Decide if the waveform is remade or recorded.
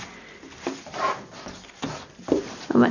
recorded